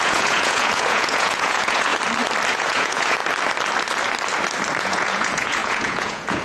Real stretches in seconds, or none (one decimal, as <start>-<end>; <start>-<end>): 1.9-2.5; 3.2-4.8